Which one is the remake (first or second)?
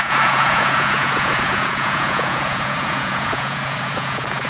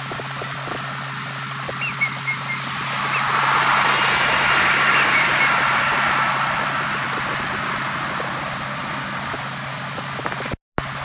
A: first